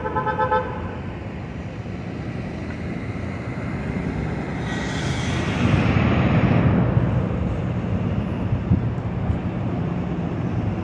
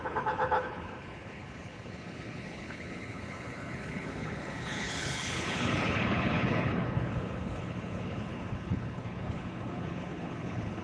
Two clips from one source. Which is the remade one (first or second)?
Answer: second